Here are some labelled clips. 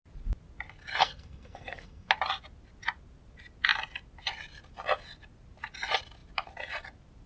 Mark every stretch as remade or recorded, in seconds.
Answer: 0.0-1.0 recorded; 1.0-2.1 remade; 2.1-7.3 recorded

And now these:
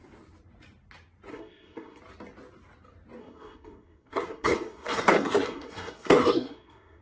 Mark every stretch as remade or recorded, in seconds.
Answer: 0.0-1.3 recorded; 1.3-2.0 remade; 2.0-3.2 recorded; 3.2-7.0 remade

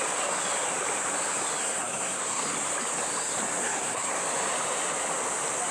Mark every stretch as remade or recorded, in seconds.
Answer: 0.0-1.6 recorded; 1.6-2.4 remade; 2.4-3.6 recorded; 3.6-4.2 remade; 4.2-5.7 recorded

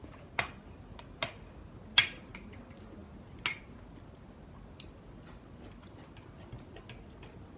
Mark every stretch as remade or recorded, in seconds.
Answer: 0.0-7.6 recorded

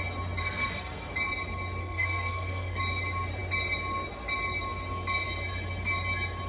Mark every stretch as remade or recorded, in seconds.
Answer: 0.0-0.4 recorded; 0.4-1.1 remade; 1.1-1.8 recorded; 1.8-2.8 remade; 2.8-6.5 recorded

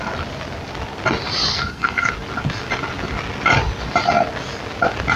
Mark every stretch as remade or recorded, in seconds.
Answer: 0.0-1.5 recorded; 1.5-2.1 remade; 2.1-5.2 recorded